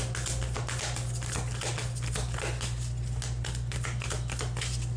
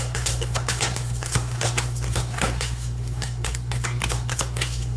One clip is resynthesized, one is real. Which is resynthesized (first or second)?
second